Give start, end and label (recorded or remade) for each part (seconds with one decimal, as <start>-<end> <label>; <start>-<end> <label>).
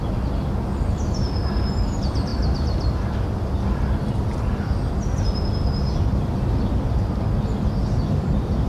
0.0-8.7 recorded